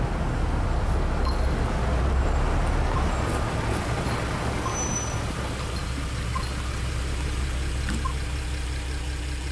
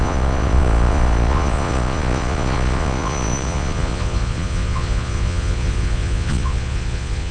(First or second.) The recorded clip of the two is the first